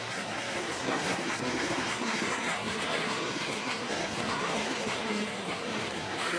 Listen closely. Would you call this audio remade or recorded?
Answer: remade